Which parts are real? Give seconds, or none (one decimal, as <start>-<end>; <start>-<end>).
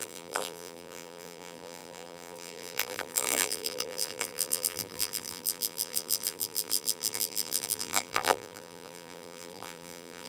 none